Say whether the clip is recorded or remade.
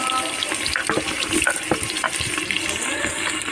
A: recorded